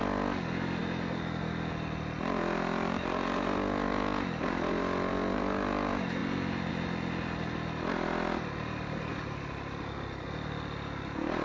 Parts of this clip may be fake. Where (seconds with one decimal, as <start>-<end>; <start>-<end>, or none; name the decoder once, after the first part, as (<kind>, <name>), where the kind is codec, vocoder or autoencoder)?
none